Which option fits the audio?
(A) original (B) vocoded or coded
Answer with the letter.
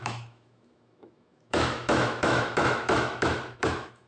B